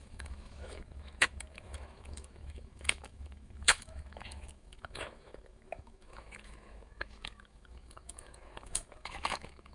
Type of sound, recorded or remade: remade